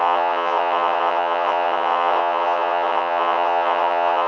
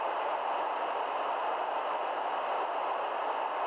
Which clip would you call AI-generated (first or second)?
first